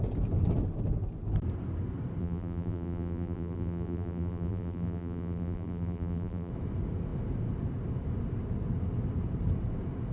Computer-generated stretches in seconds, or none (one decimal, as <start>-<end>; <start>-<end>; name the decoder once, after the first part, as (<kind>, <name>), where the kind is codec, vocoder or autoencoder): 2.2-6.5 (vocoder, BigVGAN v2)